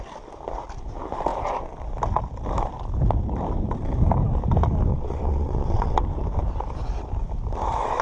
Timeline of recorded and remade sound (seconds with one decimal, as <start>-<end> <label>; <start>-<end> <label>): 0.0-4.9 recorded; 4.9-6.0 remade; 6.0-8.0 recorded